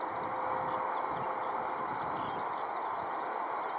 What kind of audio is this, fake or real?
real